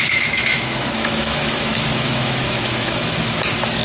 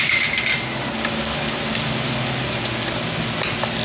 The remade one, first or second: first